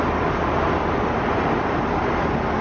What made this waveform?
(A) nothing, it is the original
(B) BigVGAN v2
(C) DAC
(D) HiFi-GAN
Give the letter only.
A